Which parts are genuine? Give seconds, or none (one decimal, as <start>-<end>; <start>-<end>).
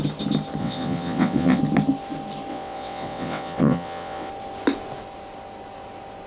0.0-0.6; 1.6-2.5; 4.3-6.3